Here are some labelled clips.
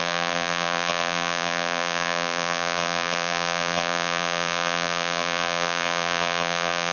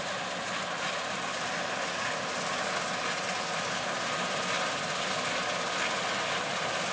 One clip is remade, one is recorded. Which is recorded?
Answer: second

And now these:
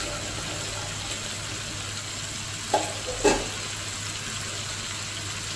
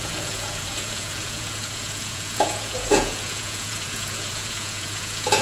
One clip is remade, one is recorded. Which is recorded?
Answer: first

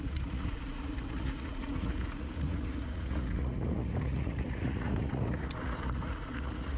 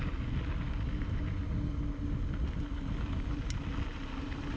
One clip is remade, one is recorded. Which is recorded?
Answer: second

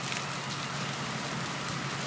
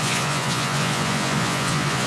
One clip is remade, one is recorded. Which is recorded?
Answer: first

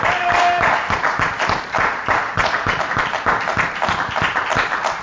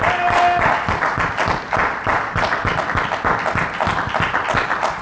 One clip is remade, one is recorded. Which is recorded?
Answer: second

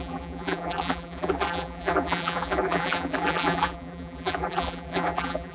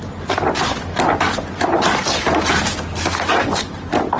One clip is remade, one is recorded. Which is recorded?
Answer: second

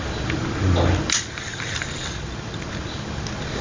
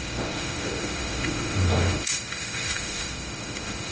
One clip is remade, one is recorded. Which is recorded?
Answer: first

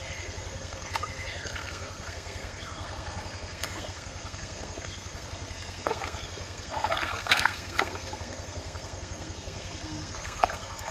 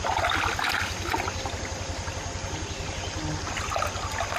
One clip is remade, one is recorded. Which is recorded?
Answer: second